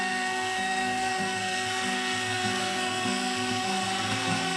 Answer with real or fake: fake